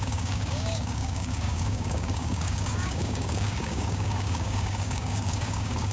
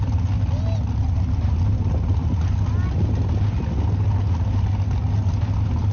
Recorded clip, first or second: second